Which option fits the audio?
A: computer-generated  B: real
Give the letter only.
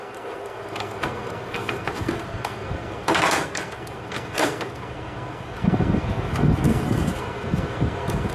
A